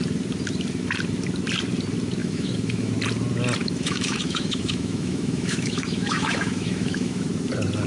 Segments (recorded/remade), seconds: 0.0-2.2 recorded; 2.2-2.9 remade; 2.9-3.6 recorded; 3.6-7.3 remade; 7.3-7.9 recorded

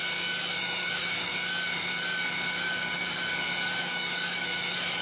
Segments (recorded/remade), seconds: 0.0-0.6 recorded; 0.6-1.3 remade; 1.3-3.8 recorded; 3.8-5.0 remade